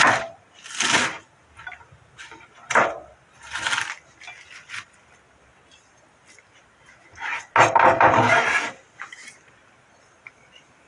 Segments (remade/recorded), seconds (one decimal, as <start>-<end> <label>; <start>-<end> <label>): 0.0-10.9 recorded